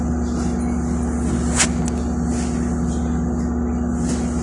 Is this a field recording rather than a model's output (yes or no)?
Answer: yes